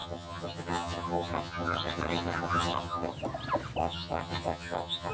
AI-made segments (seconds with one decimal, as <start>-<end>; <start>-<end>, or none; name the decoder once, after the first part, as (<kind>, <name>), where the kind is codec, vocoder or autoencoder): 0.0-3.1 (vocoder, HiFi-GAN); 3.8-5.1